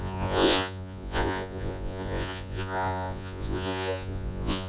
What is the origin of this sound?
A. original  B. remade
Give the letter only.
B